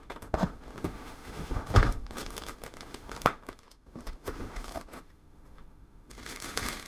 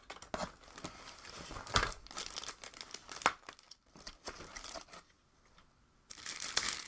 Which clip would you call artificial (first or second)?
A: first